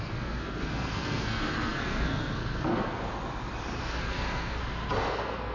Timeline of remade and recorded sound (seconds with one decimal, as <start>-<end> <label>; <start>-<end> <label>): 0.0-3.0 remade; 3.0-3.8 recorded; 3.8-4.6 remade; 4.6-5.1 recorded; 5.1-5.5 remade